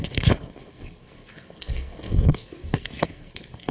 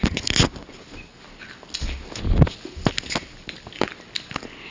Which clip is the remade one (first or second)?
first